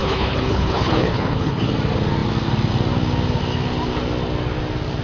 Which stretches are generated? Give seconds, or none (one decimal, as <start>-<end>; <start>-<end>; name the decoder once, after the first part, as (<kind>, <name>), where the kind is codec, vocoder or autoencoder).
0.0-1.7 (codec, HILCodec)